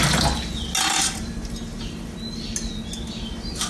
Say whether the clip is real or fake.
real